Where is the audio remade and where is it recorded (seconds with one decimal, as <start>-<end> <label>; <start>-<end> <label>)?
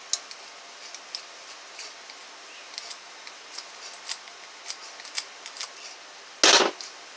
0.0-7.2 recorded